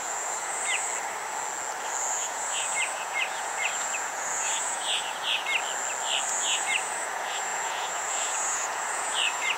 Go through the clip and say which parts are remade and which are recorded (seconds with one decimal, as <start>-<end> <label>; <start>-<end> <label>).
0.0-0.9 remade; 0.9-2.1 recorded; 2.1-5.5 remade; 5.5-6.3 recorded; 6.3-9.6 remade